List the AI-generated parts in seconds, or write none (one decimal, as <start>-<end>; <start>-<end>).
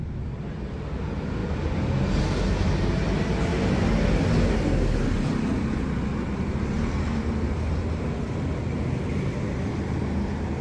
7.8-8.3